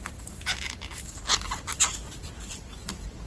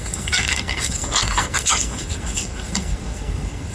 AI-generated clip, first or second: second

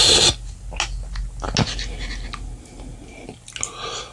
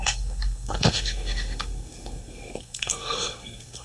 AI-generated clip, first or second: second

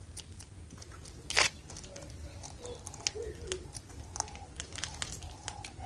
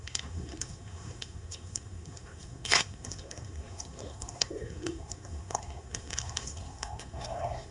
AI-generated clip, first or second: second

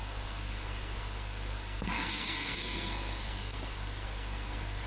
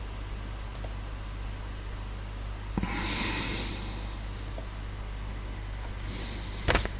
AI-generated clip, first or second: first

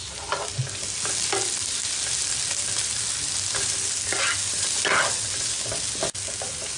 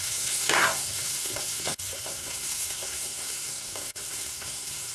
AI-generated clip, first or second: second